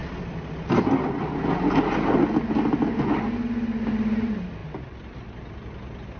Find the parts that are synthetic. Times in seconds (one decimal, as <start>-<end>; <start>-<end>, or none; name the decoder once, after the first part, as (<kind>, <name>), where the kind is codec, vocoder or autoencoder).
none